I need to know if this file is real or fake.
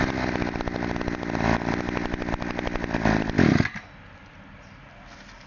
real